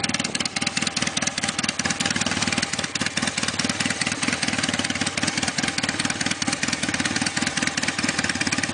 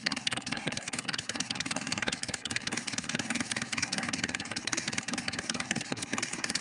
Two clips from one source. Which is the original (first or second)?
first